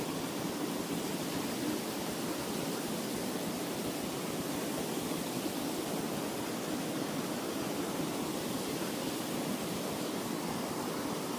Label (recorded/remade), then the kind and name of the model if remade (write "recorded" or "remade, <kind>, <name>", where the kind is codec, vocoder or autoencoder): recorded